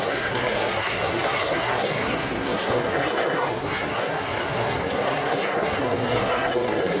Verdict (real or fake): fake